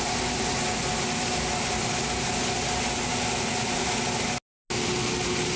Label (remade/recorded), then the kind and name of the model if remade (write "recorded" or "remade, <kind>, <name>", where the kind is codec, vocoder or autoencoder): recorded